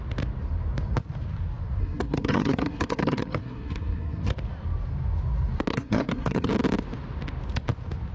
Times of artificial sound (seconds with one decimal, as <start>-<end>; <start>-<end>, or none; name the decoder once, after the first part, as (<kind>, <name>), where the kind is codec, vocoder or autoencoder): 1.8-4.3 (codec, SNAC); 5.7-6.5